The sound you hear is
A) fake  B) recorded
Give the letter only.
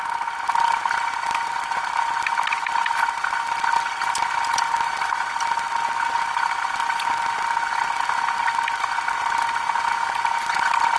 B